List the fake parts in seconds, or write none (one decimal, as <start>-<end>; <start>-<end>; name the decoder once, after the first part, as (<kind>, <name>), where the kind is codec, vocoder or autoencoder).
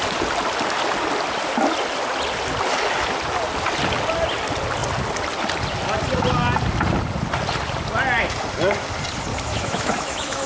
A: 9.3-10.5 (autoencoder, DAC-VAE)